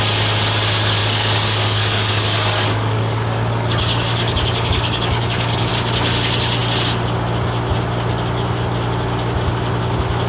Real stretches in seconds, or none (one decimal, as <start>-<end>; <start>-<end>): 0.0-1.0; 5.7-10.3